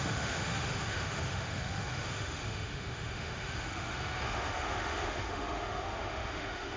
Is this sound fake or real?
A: fake